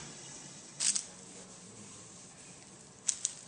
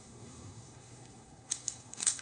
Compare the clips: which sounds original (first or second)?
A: first